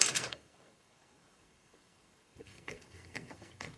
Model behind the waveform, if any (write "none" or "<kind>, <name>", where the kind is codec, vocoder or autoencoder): codec, SNAC